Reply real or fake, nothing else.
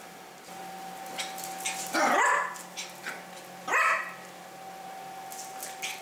real